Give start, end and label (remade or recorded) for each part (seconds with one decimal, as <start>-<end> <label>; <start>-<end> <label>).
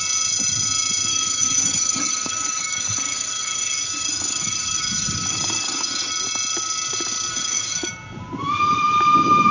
0.0-1.1 recorded; 1.1-6.1 remade; 6.1-7.3 recorded; 7.3-7.9 remade; 7.9-9.5 recorded